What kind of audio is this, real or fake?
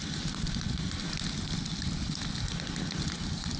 real